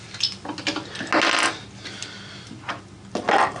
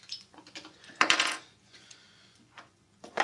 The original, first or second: first